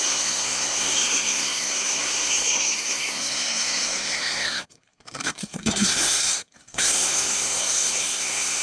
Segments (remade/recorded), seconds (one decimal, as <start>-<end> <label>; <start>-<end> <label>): 0.0-8.6 remade